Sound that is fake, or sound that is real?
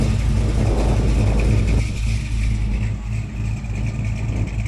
real